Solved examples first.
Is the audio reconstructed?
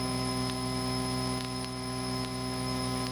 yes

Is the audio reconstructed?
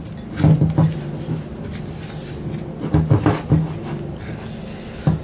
no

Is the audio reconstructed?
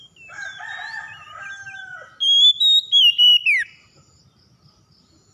no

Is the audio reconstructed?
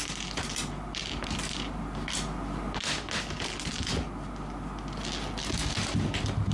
no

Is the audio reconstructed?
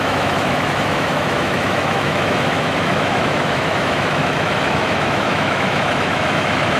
yes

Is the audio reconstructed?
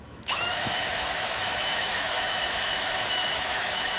yes